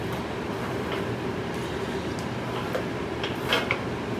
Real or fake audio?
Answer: real